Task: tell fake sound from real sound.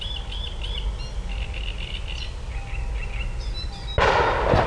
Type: real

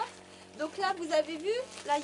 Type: real